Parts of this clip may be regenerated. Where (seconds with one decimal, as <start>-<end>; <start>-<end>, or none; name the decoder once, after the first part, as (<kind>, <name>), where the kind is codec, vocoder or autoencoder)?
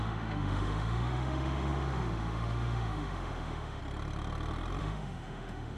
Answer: 0.0-3.8 (autoencoder, DAC-VAE); 4.8-5.8